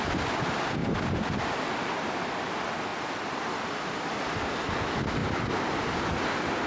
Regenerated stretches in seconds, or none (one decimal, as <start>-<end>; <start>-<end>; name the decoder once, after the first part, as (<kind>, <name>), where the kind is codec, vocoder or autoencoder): 0.8-1.8 (vocoder, BigVGAN v2)